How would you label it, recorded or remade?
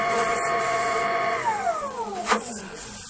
remade